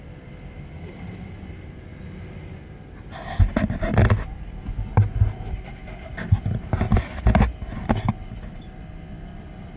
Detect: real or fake real